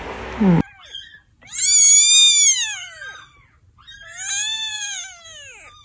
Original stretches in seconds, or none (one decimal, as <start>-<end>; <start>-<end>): 0.0-5.8